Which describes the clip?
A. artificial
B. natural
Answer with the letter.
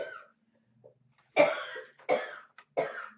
B